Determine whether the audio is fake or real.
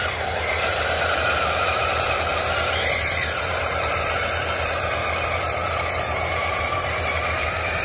fake